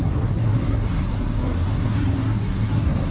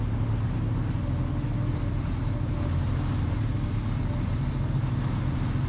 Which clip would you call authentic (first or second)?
second